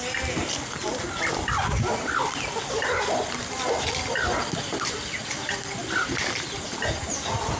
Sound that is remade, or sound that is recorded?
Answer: recorded